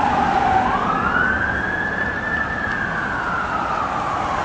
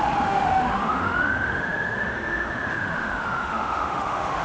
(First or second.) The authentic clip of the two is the first